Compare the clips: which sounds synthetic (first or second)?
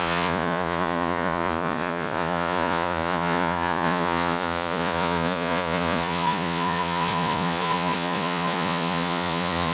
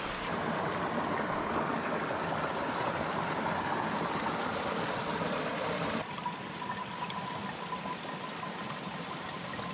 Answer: first